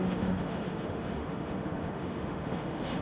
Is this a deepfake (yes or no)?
yes